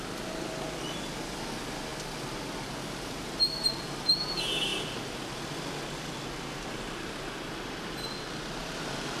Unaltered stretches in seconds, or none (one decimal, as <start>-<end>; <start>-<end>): 0.0-9.2

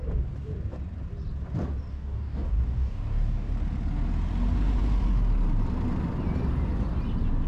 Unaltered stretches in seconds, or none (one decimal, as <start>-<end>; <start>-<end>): 0.0-1.9; 3.5-7.5